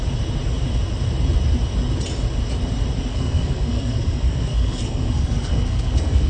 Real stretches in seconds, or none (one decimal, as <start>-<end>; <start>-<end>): 0.0-3.1